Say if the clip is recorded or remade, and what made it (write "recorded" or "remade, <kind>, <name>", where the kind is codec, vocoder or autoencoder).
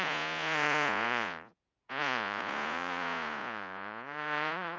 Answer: remade, vocoder, Vocos